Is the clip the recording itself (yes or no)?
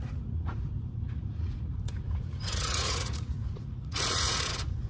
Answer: no